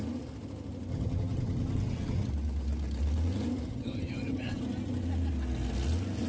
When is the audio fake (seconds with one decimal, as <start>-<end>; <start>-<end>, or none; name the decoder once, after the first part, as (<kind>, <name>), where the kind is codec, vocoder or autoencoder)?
0.9-2.3 (vocoder, HiFi-GAN); 3.7-4.6